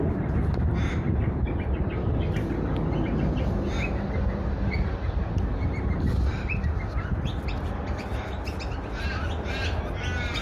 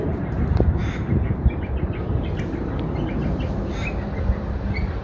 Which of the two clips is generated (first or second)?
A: second